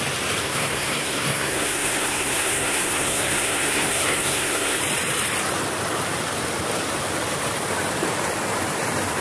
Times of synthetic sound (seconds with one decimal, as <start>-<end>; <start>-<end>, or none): 0.4-4.8